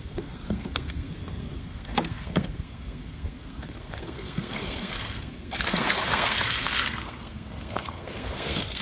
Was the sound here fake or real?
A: fake